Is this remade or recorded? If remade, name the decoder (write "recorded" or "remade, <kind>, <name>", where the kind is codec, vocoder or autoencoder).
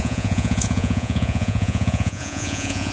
remade, vocoder, Vocos